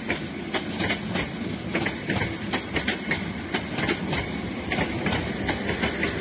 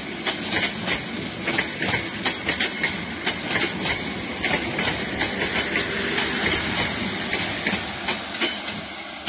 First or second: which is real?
second